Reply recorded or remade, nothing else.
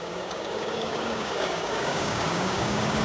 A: remade